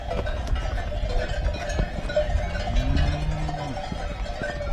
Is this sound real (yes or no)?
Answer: yes